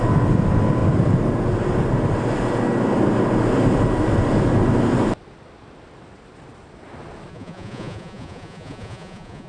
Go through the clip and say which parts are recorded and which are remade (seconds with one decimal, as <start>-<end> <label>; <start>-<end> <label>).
0.0-7.3 recorded; 7.3-9.5 remade